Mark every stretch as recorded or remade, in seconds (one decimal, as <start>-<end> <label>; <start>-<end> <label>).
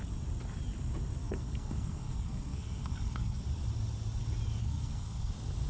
0.0-1.2 recorded; 1.2-3.4 remade; 3.4-4.6 recorded; 4.6-5.3 remade; 5.3-5.7 recorded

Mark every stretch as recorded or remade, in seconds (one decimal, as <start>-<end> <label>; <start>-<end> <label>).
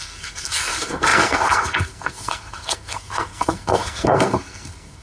0.0-5.0 remade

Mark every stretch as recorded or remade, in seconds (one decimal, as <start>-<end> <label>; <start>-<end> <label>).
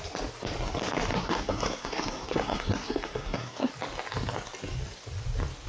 0.0-1.1 recorded; 1.1-3.7 remade; 3.7-5.7 recorded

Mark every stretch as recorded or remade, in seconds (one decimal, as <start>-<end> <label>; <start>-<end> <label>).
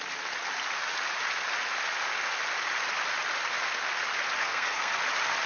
0.0-4.4 recorded; 4.4-5.0 remade; 5.0-5.5 recorded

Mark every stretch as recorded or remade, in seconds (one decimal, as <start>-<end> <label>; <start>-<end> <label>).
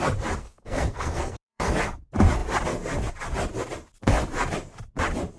0.0-0.4 recorded; 0.4-1.7 remade; 1.7-5.4 recorded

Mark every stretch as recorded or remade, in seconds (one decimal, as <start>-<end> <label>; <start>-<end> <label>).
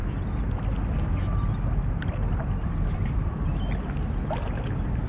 0.0-5.1 recorded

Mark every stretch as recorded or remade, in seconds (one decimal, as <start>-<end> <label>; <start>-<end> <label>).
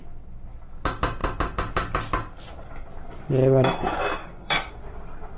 0.0-4.2 recorded; 4.2-4.7 remade; 4.7-5.4 recorded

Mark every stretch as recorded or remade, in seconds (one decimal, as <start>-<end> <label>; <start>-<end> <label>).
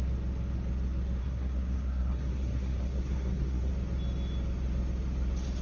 0.0-1.2 recorded; 1.2-3.7 remade; 3.7-5.6 recorded